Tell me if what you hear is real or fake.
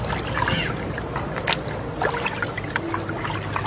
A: real